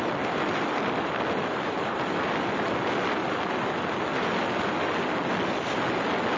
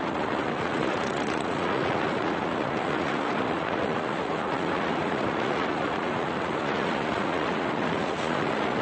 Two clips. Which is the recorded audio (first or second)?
first